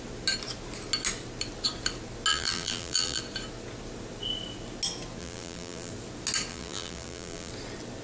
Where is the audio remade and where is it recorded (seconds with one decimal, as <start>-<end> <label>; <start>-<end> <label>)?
0.0-2.3 recorded; 2.3-3.2 remade; 3.2-5.2 recorded; 5.2-5.9 remade; 5.9-6.5 recorded; 6.5-7.5 remade; 7.5-8.0 recorded